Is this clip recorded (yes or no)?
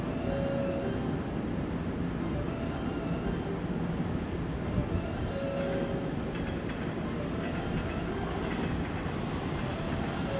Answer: yes